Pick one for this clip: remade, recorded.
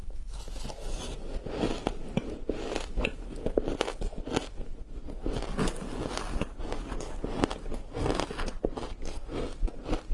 recorded